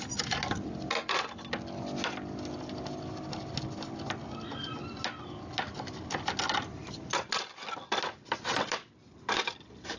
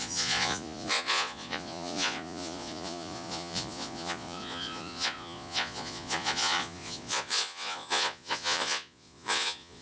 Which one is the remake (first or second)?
second